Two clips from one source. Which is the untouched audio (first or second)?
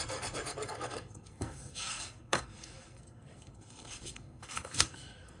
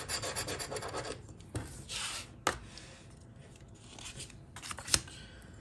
second